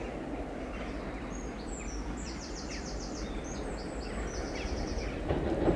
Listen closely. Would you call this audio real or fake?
real